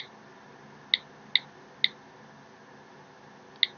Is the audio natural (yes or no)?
yes